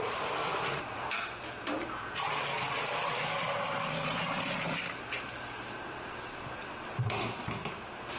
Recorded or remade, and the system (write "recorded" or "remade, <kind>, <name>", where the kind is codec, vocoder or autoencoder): recorded